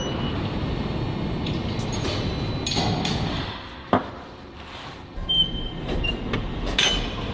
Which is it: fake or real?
real